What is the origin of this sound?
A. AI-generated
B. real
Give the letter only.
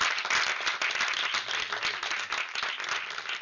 B